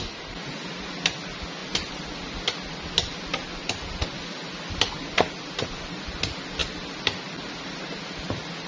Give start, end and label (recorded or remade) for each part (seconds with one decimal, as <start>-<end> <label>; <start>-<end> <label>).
0.0-8.7 recorded